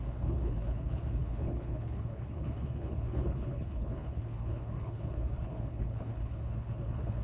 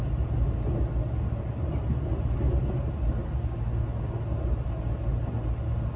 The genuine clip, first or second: second